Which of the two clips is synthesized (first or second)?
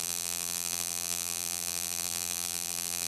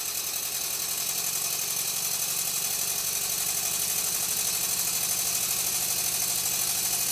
first